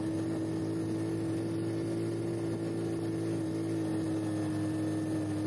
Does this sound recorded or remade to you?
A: recorded